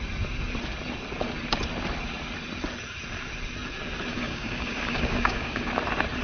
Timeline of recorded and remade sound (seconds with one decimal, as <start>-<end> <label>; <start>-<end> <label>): 0.0-4.1 recorded; 4.1-5.7 remade; 5.7-6.2 recorded